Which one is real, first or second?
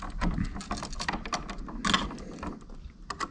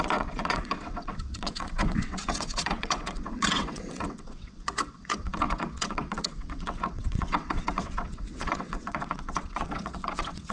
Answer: first